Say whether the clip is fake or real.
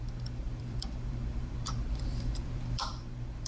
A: fake